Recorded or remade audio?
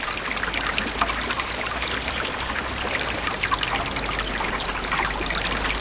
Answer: recorded